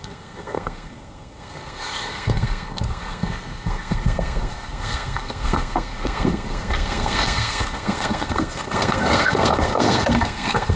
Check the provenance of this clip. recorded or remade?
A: remade